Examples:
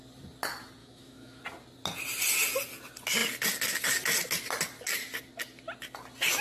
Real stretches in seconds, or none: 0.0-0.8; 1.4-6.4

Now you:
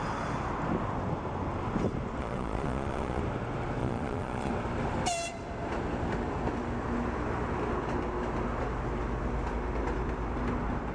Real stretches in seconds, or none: 0.0-2.2; 3.2-3.8; 4.5-10.9

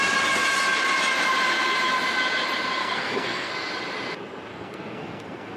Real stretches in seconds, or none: 0.0-2.8; 3.5-4.5